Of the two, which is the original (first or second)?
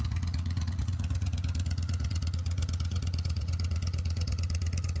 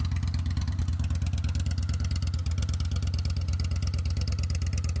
second